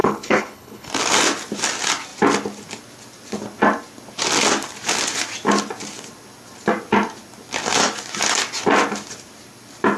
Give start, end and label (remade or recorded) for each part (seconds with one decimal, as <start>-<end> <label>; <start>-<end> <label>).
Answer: 0.0-0.9 remade; 0.9-10.0 recorded